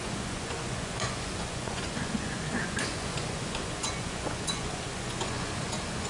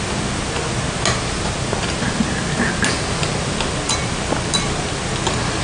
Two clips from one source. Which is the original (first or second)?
second